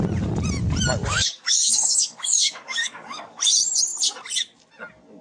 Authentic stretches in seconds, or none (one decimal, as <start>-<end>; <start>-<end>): 0.0-1.1; 3.4-5.2